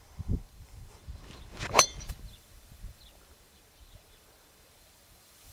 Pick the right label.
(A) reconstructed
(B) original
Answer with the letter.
A